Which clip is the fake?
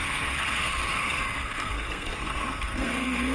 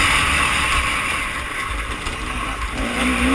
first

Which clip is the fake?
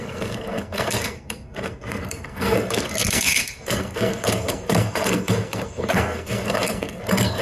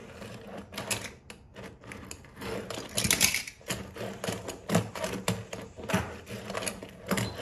first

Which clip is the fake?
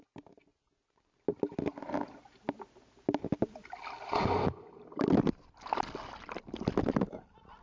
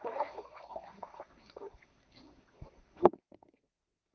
second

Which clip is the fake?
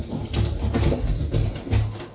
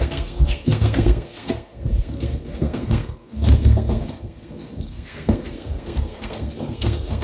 second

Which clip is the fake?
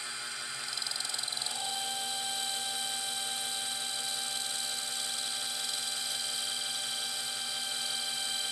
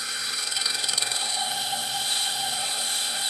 second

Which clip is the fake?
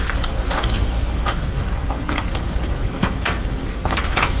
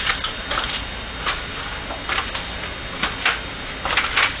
first